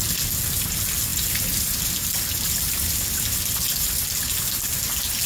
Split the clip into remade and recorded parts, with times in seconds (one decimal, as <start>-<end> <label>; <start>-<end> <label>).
0.0-1.1 recorded; 1.1-4.3 remade; 4.3-5.3 recorded